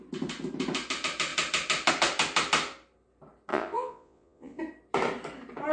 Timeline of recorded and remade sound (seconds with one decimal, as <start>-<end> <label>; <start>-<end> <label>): 0.0-3.5 recorded; 3.5-4.6 remade; 4.6-5.7 recorded